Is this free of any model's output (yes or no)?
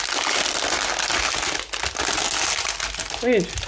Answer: yes